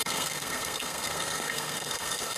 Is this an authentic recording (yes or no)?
no